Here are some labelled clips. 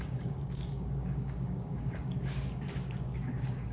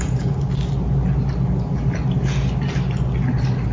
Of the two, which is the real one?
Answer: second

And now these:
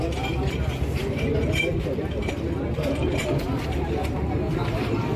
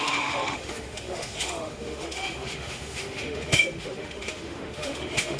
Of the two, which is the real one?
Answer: first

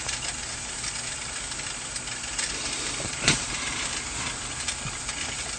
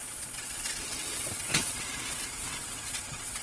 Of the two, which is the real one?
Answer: first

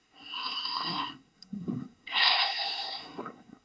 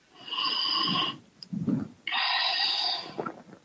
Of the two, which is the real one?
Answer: second